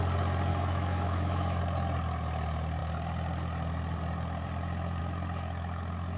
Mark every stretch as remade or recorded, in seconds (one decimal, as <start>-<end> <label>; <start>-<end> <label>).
0.0-0.5 recorded; 0.5-1.6 remade; 1.6-6.2 recorded